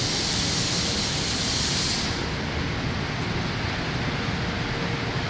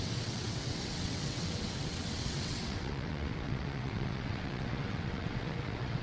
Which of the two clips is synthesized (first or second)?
second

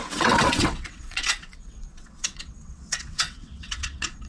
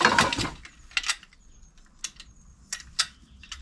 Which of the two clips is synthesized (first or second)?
first